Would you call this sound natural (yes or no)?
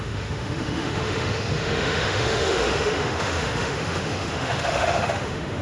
no